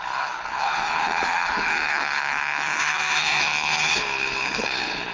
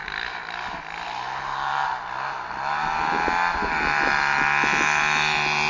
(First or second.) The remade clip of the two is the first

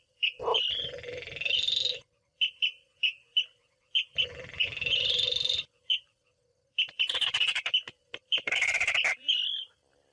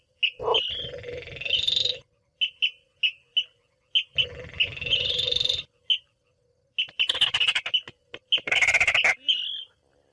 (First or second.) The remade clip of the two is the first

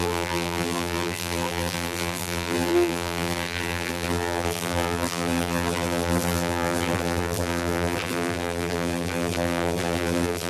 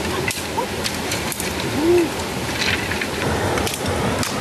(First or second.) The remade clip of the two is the first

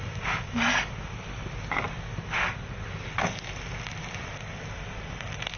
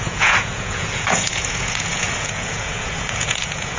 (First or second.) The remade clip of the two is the second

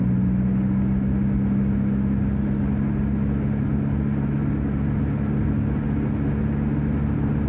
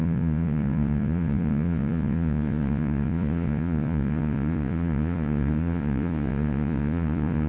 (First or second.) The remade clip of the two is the second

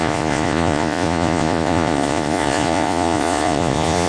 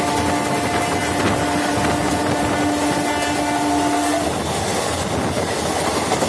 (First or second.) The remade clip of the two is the first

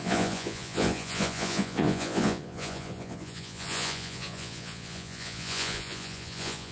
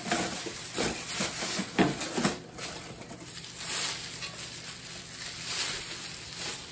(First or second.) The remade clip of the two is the first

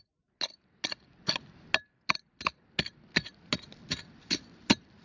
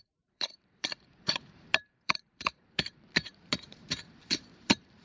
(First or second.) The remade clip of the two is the second